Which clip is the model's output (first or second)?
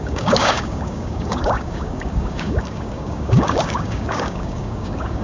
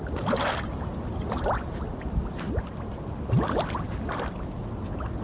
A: first